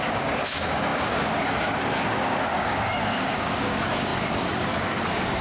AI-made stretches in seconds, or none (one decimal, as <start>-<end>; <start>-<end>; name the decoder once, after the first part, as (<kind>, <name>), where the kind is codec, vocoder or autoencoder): 0.0-5.4 (codec, DAC)